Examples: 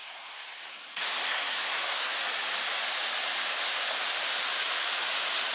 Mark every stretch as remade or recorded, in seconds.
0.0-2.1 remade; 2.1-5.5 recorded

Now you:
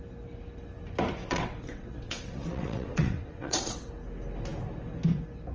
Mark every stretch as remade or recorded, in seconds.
0.0-1.2 recorded; 1.2-3.9 remade; 3.9-5.5 recorded

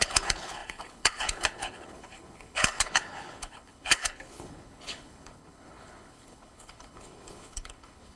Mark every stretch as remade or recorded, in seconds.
0.0-8.2 remade

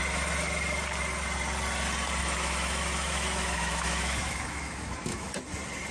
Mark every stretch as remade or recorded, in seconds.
0.0-2.2 recorded; 2.2-5.3 remade; 5.3-5.9 recorded

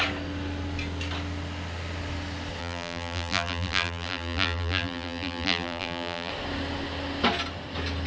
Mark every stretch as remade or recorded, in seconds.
0.0-2.6 recorded; 2.6-6.3 remade; 6.3-8.1 recorded

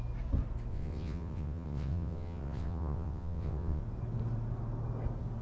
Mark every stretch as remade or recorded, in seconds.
0.0-0.7 recorded; 0.7-3.8 remade; 3.8-5.4 recorded

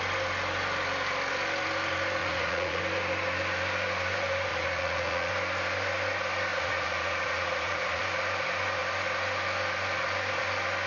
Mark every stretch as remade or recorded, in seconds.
0.0-2.2 recorded; 2.2-2.8 remade; 2.8-4.5 recorded; 4.5-5.3 remade; 5.3-6.5 recorded; 6.5-8.0 remade; 8.0-10.9 recorded